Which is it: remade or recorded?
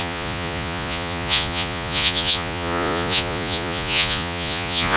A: remade